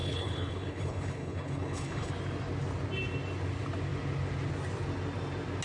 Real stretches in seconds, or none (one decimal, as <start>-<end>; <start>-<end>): 2.1-5.6